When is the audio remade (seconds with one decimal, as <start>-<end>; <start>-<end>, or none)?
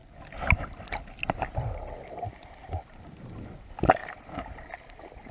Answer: 3.2-5.3